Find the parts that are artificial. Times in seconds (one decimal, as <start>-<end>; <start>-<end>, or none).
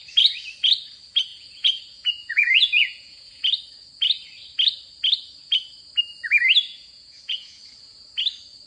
1.3-3.4; 6.7-7.6